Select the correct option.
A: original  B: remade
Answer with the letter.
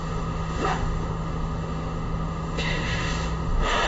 B